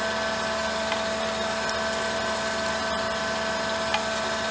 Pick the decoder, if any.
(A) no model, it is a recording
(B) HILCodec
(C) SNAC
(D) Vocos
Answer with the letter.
A